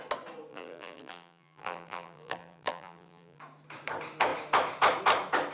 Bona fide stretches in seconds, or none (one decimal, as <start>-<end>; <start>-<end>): 0.0-0.5; 3.4-5.5